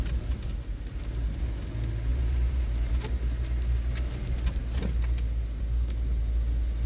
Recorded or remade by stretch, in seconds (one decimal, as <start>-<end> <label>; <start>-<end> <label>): 0.0-2.1 recorded; 2.1-2.9 remade; 2.9-6.9 recorded